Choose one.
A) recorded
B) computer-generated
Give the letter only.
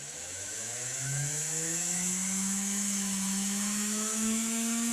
B